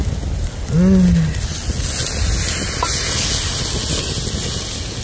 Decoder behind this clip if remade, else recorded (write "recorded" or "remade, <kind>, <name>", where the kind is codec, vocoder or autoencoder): recorded